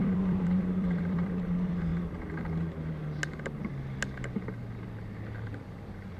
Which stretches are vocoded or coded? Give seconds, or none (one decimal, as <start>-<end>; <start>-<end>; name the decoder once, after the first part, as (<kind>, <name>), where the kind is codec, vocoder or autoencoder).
0.0-1.9 (vocoder, BigVGAN v2); 5.6-6.2